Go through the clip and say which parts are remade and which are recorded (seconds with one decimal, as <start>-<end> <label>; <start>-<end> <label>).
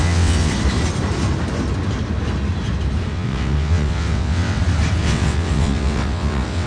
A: 0.0-0.5 remade; 0.5-3.1 recorded; 3.1-4.6 remade; 4.6-5.0 recorded; 5.0-6.7 remade